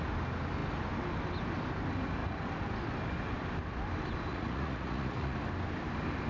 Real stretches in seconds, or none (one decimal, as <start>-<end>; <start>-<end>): 0.0-4.3; 5.4-6.3